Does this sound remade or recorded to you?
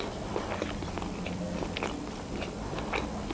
recorded